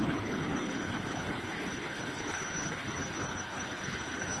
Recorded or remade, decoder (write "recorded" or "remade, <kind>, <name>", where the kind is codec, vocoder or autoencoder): remade, codec, HILCodec